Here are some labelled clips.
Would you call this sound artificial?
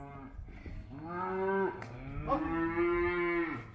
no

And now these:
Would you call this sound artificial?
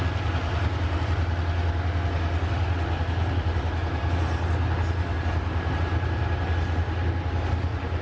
no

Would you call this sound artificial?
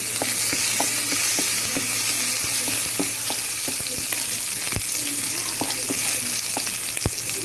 no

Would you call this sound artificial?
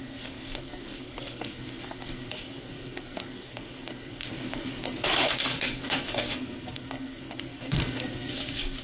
yes